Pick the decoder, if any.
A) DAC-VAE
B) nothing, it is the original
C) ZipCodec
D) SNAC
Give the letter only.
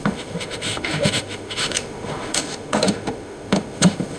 A